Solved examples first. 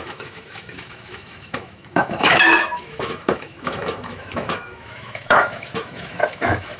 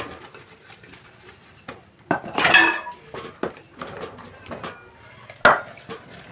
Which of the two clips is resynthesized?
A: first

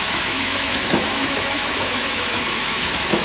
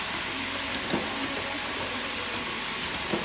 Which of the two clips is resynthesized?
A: first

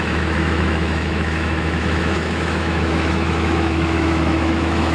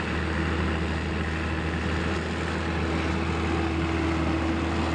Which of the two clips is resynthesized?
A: first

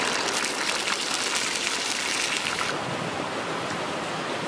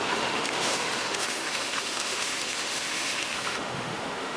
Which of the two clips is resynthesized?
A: second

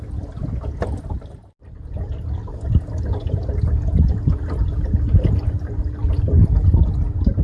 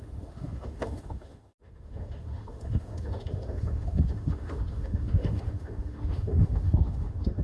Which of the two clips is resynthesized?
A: second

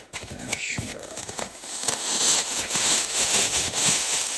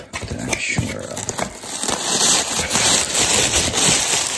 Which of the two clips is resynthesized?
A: first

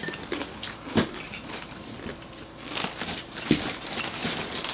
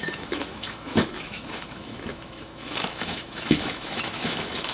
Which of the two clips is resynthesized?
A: second